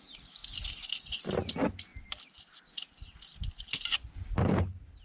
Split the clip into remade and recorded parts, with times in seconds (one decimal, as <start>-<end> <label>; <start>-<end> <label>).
0.0-5.0 recorded

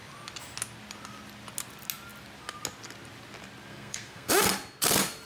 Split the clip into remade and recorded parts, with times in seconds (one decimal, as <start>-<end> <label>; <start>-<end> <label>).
0.0-3.7 recorded; 3.7-4.3 remade; 4.3-5.3 recorded

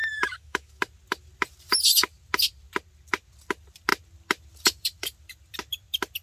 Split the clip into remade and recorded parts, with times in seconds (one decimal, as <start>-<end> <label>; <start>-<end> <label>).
0.0-0.8 remade; 0.8-6.2 recorded

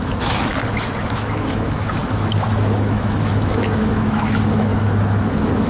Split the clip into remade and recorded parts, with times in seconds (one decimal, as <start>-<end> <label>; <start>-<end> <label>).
0.0-0.5 remade; 0.5-1.0 recorded; 1.0-4.7 remade; 4.7-5.3 recorded; 5.3-5.7 remade

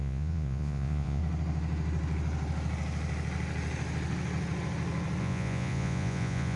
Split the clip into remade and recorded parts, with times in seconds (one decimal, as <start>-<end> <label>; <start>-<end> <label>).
0.0-1.2 remade; 1.2-5.2 recorded; 5.2-6.6 remade

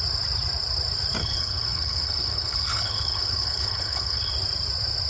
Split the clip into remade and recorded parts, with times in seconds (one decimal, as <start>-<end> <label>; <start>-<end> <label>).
0.0-1.2 recorded; 1.2-4.3 remade; 4.3-5.1 recorded

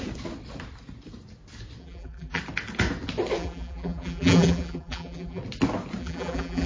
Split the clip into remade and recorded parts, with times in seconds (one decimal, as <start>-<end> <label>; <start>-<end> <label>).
0.0-1.8 recorded; 1.8-2.4 remade; 2.4-3.4 recorded; 3.4-5.4 remade; 5.4-6.0 recorded; 6.0-6.7 remade